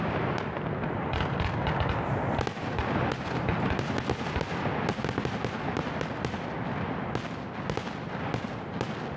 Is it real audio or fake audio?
real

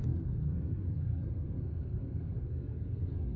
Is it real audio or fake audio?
fake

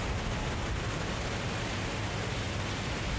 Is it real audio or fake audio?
real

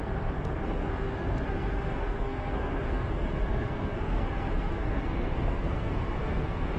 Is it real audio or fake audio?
fake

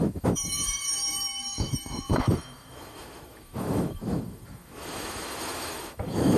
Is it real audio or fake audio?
fake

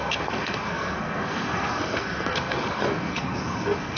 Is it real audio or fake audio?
fake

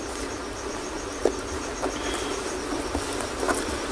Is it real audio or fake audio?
real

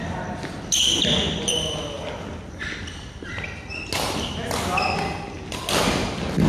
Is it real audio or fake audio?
real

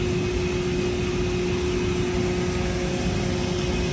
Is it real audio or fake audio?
real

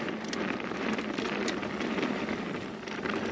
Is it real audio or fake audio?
fake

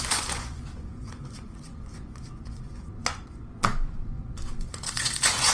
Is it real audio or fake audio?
fake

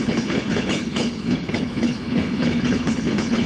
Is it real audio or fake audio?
fake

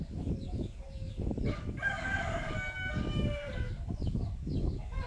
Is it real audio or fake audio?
fake